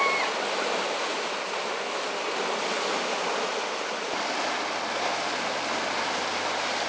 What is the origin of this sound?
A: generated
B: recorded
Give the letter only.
B